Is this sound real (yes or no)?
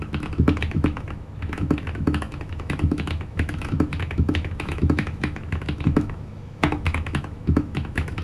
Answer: no